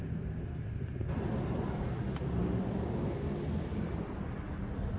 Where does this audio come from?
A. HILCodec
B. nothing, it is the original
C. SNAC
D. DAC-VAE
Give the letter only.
B